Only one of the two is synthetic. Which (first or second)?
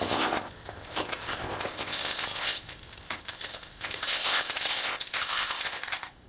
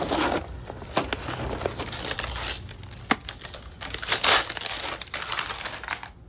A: first